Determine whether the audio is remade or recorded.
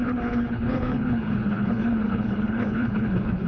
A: remade